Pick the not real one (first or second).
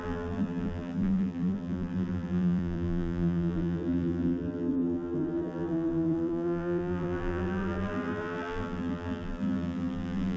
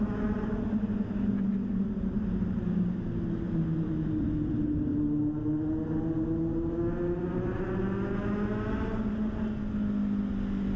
first